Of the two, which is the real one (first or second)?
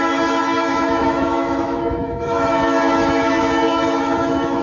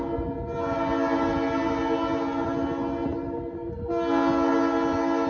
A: second